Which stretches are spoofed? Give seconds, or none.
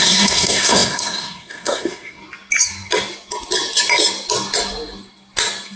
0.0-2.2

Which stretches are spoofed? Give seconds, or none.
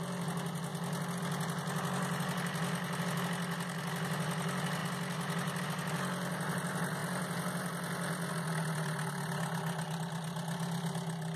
none